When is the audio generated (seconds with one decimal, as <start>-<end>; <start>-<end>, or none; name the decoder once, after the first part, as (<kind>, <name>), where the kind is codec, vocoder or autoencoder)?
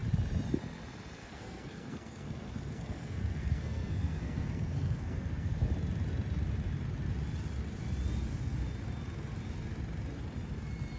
1.2-5.7 (codec, SNAC)